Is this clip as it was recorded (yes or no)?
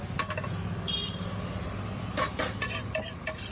yes